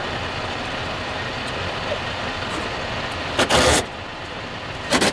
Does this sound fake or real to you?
real